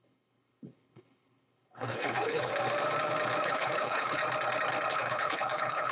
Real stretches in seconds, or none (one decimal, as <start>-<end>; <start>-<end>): 2.5-3.4; 4.2-4.9